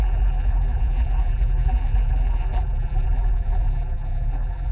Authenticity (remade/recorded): remade